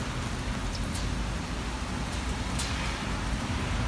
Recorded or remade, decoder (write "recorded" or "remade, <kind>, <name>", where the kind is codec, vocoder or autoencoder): recorded